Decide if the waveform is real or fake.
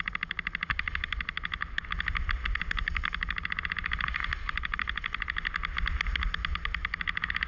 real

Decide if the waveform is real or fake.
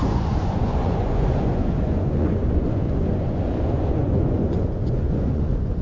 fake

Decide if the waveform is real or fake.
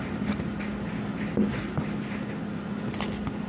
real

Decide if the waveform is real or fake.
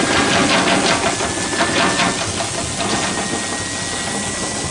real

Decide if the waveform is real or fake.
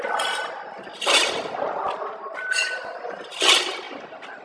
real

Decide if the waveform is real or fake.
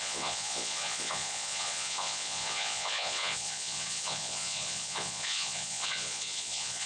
fake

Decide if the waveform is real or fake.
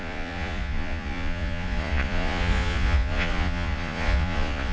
fake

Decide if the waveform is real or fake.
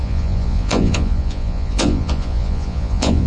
fake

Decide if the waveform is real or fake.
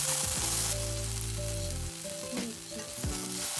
real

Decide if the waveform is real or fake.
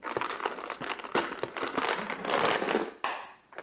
real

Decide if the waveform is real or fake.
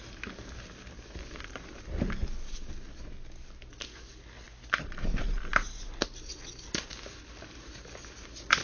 real